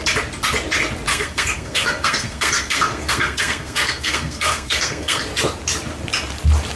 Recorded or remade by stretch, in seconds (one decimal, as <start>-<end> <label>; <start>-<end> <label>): 0.0-1.1 recorded; 1.1-5.2 remade; 5.2-6.8 recorded